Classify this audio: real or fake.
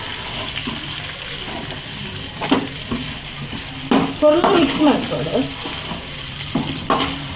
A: real